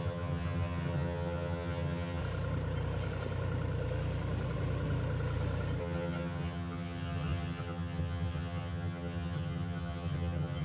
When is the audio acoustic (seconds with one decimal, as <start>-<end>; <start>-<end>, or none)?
2.2-5.8